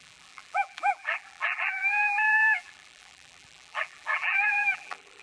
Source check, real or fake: fake